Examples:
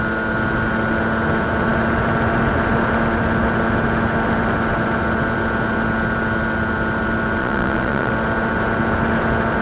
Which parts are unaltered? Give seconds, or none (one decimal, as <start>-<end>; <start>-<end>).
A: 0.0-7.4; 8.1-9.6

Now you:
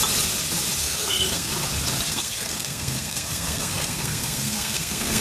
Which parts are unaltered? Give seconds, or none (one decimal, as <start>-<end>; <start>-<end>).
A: 0.0-0.8; 1.5-2.1

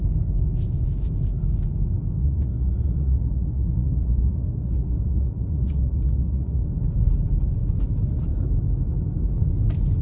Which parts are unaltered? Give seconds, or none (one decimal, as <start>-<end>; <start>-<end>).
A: 0.0-2.2; 6.6-10.0

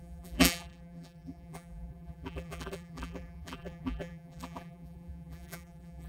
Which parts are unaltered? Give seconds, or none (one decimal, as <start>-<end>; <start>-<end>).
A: none

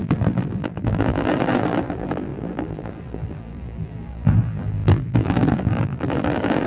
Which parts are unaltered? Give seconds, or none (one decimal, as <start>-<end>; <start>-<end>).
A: none

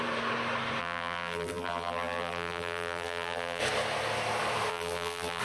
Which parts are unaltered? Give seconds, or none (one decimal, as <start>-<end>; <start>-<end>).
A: 0.0-0.8; 3.6-4.7

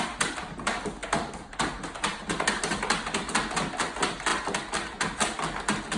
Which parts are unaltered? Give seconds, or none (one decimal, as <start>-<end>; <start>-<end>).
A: 0.0-6.0

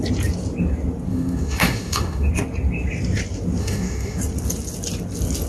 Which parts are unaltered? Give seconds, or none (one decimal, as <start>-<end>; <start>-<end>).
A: 0.0-1.1; 2.3-3.6; 4.2-5.5